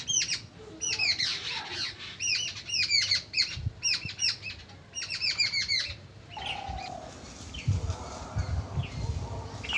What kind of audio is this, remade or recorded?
recorded